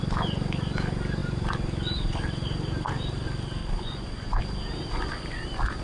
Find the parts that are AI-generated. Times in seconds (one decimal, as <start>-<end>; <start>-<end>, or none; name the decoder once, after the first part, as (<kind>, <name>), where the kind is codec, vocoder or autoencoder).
3.6-4.4 (vocoder, Vocos)